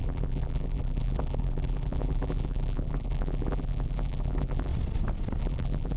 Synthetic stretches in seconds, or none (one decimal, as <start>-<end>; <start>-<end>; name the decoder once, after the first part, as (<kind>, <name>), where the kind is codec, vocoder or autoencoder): 0.0-4.7 (vocoder, BigVGAN v2); 5.4-6.0